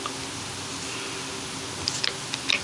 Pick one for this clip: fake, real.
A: real